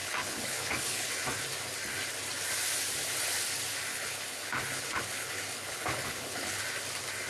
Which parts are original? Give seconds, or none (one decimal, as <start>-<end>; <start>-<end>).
1.1-3.9; 6.6-7.3